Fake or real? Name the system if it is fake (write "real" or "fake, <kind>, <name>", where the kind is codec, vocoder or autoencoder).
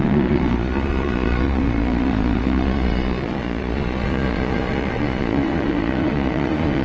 fake, vocoder, Vocos